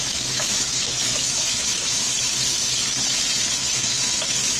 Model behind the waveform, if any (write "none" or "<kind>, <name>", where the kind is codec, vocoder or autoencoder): autoencoder, DAC-VAE